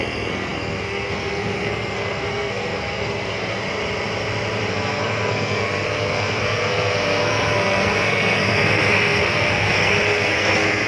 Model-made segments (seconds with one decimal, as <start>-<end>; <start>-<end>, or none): 0.0-3.6; 4.7-10.9